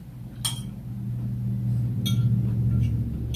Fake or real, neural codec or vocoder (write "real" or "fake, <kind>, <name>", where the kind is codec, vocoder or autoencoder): real